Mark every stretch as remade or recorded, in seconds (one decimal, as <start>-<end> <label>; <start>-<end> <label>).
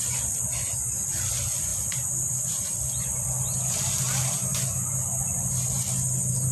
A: 0.0-6.5 recorded